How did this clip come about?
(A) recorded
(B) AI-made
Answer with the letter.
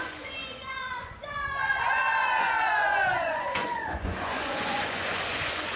B